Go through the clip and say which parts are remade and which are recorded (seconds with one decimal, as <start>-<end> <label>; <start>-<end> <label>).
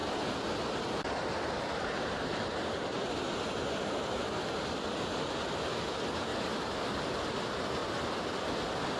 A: 0.0-2.7 remade; 2.7-6.3 recorded; 6.3-7.3 remade; 7.3-7.8 recorded; 7.8-8.5 remade; 8.5-9.0 recorded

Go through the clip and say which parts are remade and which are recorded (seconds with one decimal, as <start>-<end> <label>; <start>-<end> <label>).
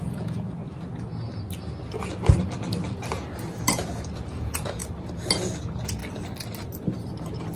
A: 0.0-0.6 remade; 0.6-4.3 recorded; 4.3-4.8 remade; 4.8-5.6 recorded; 5.6-6.0 remade; 6.0-7.6 recorded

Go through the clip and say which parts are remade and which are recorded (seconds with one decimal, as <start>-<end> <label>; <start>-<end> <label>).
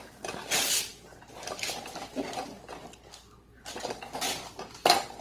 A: 0.0-5.2 recorded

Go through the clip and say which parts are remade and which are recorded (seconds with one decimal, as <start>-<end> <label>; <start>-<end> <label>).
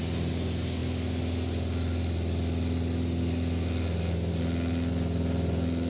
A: 0.0-5.9 recorded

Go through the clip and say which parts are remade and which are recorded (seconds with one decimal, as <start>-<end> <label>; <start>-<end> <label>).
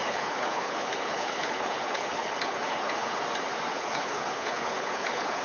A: 0.0-3.2 remade; 3.2-3.7 recorded; 3.7-5.4 remade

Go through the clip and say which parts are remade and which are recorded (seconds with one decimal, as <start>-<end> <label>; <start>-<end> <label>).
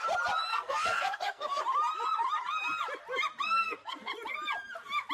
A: 0.0-0.5 recorded; 0.5-1.6 remade; 1.6-3.6 recorded; 3.6-4.1 remade; 4.1-5.1 recorded